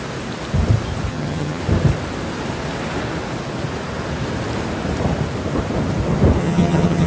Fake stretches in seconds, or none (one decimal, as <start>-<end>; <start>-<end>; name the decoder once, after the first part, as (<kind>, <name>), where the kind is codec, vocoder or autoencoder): 1.1-1.6 (vocoder, HiFi-GAN); 6.4-7.1